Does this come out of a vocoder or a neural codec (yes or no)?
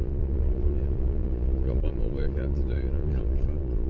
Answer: yes